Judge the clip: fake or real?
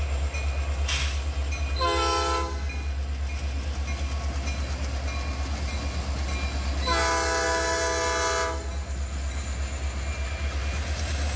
real